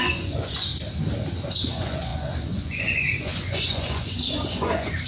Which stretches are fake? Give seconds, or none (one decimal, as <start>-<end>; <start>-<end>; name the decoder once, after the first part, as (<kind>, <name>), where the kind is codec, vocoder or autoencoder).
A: 0.0-0.7 (vocoder, Vocos); 1.5-5.1